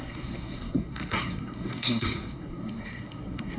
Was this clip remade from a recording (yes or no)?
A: yes